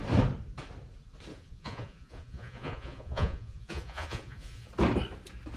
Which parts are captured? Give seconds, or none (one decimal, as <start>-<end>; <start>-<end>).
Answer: 0.0-1.3; 4.7-5.6

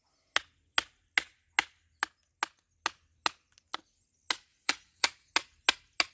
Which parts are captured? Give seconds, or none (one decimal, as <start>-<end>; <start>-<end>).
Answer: 0.0-4.5; 5.3-6.1

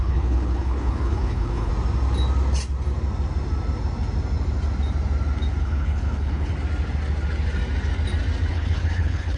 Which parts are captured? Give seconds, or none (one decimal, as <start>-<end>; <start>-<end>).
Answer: 1.7-5.6; 6.5-8.5

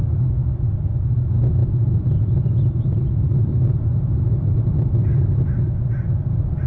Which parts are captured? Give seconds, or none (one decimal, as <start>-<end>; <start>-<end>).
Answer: 0.0-1.6; 5.6-6.7

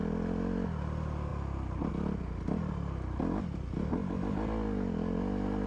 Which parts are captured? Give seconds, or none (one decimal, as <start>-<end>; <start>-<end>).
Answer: 0.0-5.7

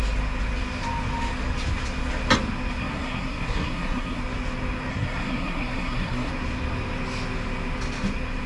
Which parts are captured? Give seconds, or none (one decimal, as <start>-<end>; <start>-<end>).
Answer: 0.0-2.8; 4.2-4.9; 6.3-8.5

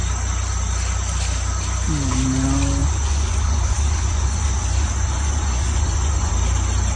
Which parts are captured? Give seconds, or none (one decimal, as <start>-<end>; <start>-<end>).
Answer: 0.0-2.8; 6.3-7.0

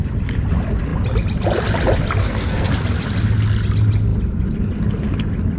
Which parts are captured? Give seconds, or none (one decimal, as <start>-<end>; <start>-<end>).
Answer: 0.0-2.2; 2.7-5.6